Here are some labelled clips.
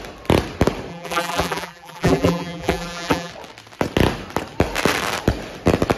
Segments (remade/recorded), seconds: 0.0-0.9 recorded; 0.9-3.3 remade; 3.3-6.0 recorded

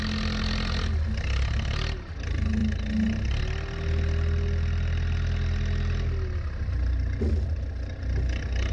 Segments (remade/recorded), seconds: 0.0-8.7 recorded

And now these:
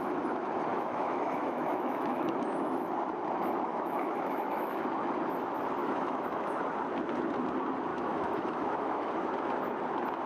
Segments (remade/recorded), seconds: 0.0-0.7 recorded; 0.7-2.9 remade; 2.9-3.7 recorded; 3.7-4.8 remade; 4.8-5.8 recorded; 5.8-6.6 remade; 6.6-7.9 recorded; 7.9-9.1 remade; 9.1-10.3 recorded

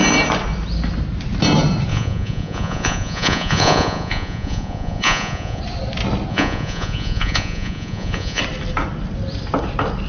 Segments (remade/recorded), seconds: 0.0-1.9 recorded; 1.9-5.6 remade; 5.6-6.3 recorded; 6.3-8.4 remade; 8.4-10.1 recorded

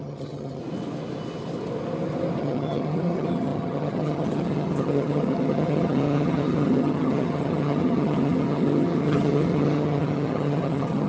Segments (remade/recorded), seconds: 0.0-0.6 remade; 0.6-2.4 recorded; 2.4-11.1 remade

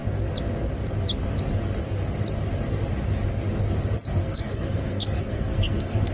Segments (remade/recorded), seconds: 0.0-4.2 recorded; 4.2-6.1 remade

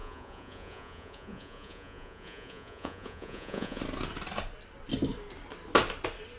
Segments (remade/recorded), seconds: 0.0-3.8 remade; 3.8-6.4 recorded